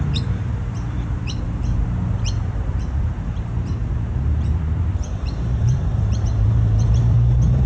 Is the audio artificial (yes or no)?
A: yes